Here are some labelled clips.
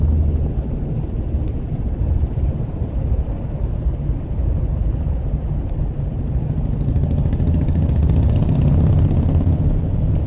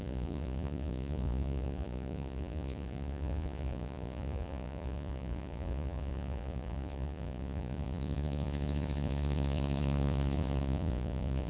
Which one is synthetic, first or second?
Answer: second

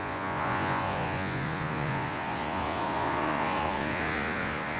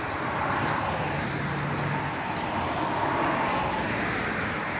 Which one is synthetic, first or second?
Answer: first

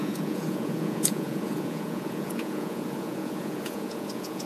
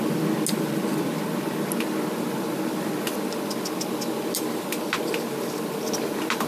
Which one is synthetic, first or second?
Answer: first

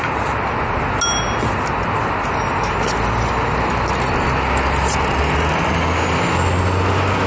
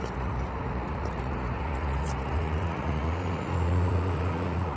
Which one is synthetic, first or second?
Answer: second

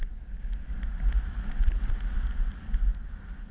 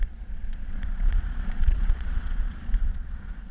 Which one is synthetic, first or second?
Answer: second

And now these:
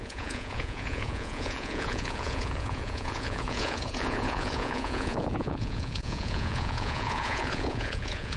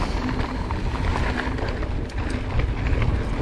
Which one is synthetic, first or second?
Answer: first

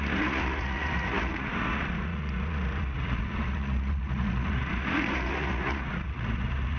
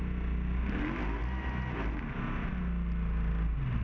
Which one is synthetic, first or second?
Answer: first